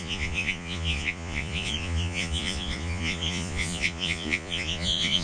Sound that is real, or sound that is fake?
fake